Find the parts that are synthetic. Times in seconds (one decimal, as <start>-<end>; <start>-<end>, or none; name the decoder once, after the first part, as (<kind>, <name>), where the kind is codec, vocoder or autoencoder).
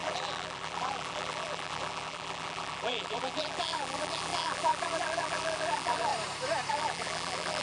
0.0-6.1 (vocoder, BigVGAN v2); 6.7-7.6